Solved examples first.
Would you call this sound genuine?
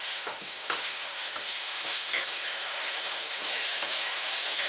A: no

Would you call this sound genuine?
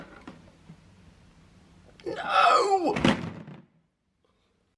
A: yes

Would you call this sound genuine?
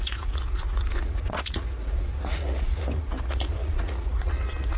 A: no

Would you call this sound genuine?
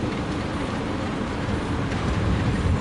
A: no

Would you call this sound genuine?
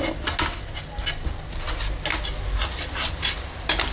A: yes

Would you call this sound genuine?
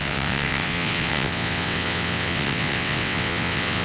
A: no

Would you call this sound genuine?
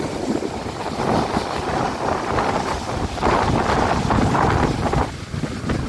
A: yes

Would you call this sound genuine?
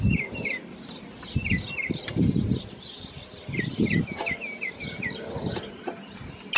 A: yes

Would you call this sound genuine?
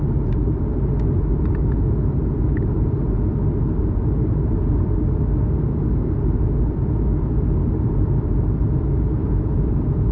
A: no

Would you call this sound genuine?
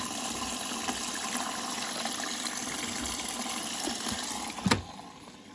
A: yes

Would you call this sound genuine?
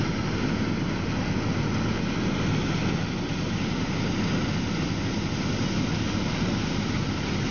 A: yes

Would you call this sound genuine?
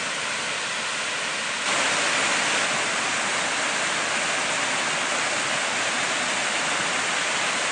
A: yes